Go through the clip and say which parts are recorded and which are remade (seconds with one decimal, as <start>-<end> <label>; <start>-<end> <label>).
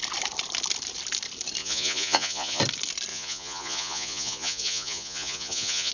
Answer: 0.0-1.6 recorded; 1.6-2.6 remade; 2.6-3.1 recorded; 3.1-5.9 remade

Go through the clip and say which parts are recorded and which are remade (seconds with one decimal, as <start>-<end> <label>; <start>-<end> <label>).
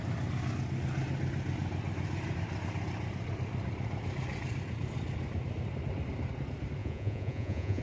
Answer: 0.0-6.8 recorded; 6.8-7.8 remade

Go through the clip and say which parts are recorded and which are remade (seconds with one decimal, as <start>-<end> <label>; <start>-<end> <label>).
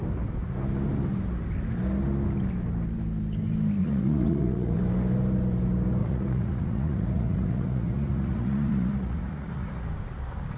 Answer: 0.0-3.8 recorded; 3.8-4.8 remade; 4.8-6.0 recorded; 6.0-9.7 remade; 9.7-10.6 recorded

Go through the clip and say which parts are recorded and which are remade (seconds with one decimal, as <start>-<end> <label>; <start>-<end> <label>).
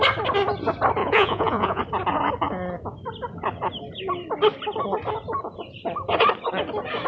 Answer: 0.0-1.0 recorded; 1.0-1.8 remade; 1.8-7.1 recorded